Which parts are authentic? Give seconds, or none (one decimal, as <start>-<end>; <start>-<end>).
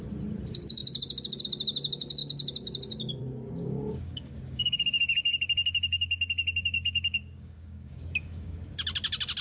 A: 0.0-3.6; 8.7-9.4